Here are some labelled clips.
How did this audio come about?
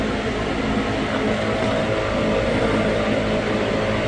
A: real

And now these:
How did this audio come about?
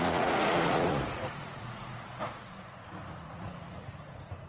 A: fake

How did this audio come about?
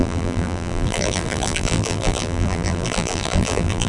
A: fake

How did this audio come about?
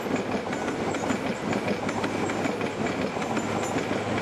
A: real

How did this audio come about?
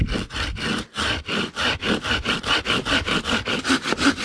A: fake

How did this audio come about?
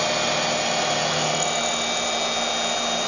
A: real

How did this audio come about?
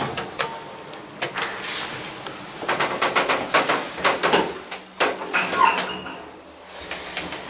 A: real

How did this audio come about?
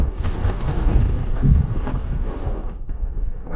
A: fake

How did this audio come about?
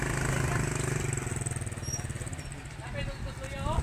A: real